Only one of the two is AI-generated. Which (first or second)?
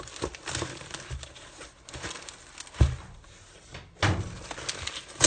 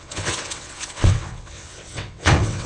second